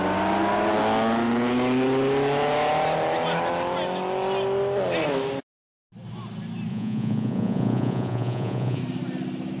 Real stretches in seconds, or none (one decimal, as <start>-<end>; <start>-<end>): 0.0-6.7; 8.8-9.6